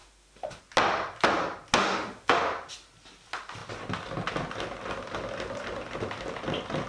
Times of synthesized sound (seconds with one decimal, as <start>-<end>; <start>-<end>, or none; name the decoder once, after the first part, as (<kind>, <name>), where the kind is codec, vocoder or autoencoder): 0.0-0.6 (autoencoder, DAC-VAE); 1.8-2.4

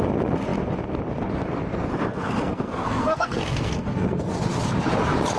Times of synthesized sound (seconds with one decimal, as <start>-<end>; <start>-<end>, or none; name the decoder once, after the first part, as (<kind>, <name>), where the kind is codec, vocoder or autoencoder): 2.1-4.3 (codec, SNAC)